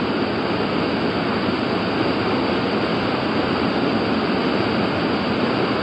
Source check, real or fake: real